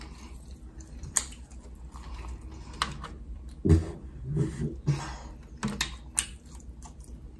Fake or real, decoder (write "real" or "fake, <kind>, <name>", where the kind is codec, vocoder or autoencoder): real